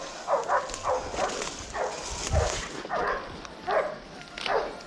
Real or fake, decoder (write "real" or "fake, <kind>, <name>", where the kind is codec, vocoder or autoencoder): real